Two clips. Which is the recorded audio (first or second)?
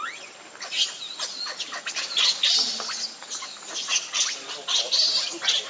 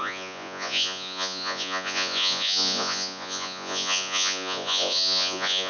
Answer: first